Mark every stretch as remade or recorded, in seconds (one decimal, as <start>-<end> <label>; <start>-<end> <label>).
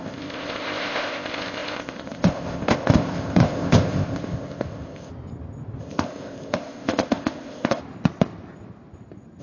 0.0-5.1 remade; 5.1-5.8 recorded; 5.8-7.8 remade; 7.8-9.4 recorded